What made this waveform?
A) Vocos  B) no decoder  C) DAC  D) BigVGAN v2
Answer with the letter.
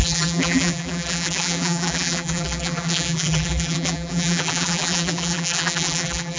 D